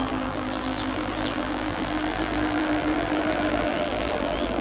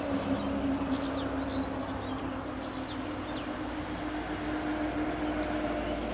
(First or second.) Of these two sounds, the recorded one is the second